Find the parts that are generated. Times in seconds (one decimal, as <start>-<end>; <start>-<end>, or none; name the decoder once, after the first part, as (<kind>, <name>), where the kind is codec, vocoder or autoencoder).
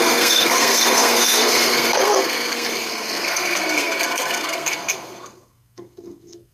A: 0.0-6.5 (codec, SNAC)